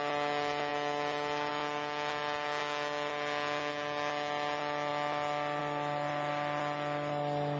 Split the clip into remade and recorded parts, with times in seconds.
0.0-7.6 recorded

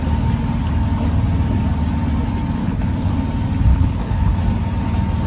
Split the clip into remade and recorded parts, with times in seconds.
0.0-2.6 recorded; 2.6-3.1 remade; 3.1-3.7 recorded; 3.7-4.4 remade; 4.4-5.3 recorded

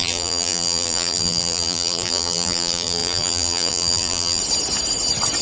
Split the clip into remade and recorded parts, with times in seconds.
0.0-4.4 remade; 4.4-5.4 recorded

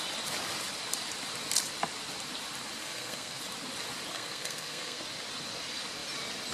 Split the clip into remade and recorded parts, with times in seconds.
0.0-2.8 recorded; 2.8-3.4 remade; 3.4-4.1 recorded; 4.1-5.0 remade; 5.0-6.5 recorded

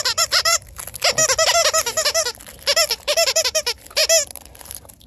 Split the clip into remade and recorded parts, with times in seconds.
0.0-0.6 remade; 0.6-2.9 recorded; 2.9-4.0 remade; 4.0-4.6 recorded; 4.6-5.1 remade